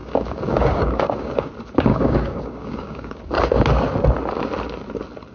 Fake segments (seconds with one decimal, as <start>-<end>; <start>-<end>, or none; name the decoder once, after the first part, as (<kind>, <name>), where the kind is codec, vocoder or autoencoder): 0.0-1.5 (codec, DAC); 1.9-3.2